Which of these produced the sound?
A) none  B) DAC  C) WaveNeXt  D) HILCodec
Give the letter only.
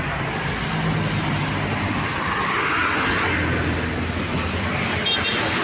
A